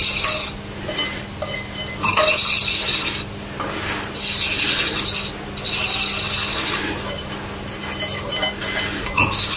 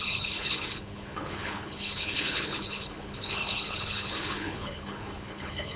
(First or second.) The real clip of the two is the first